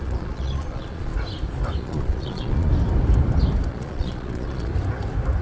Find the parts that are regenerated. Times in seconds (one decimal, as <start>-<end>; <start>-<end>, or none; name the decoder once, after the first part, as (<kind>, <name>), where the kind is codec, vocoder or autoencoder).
0.0-1.1 (vocoder, Vocos); 1.8-2.7; 3.7-4.7